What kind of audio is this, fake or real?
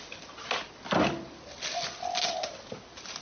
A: real